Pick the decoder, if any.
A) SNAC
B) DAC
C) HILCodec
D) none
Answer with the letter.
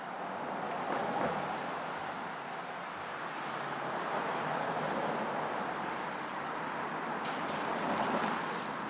D